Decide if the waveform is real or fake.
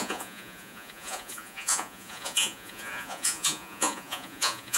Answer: fake